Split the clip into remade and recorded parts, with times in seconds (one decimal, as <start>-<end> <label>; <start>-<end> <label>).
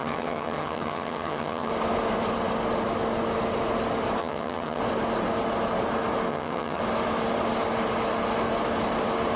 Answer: 0.0-1.7 remade; 1.7-4.2 recorded; 4.2-4.8 remade; 4.8-6.3 recorded; 6.3-6.8 remade; 6.8-9.4 recorded